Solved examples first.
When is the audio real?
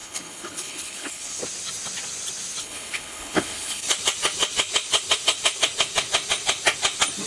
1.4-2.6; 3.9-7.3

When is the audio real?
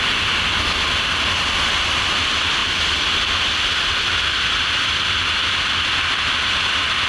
0.0-7.1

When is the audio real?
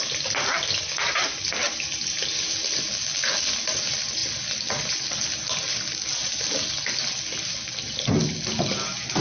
0.0-9.2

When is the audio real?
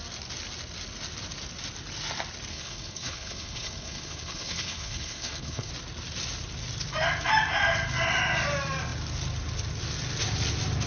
0.0-2.5; 5.7-10.9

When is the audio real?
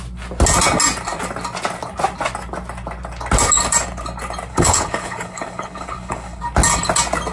0.0-4.5; 6.4-7.3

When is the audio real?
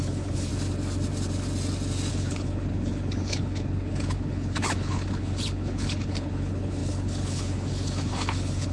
0.5-2.1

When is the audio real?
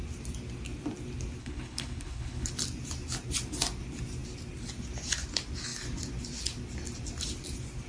0.0-1.4; 2.5-7.9